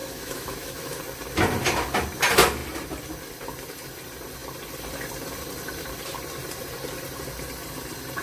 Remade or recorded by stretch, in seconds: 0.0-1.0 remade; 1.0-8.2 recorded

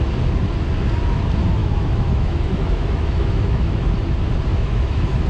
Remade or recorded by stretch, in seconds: 0.0-1.6 recorded; 1.6-3.9 remade; 3.9-4.5 recorded; 4.5-5.3 remade